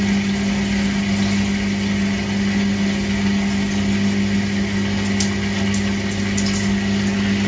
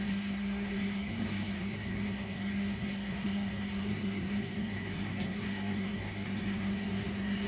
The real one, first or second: first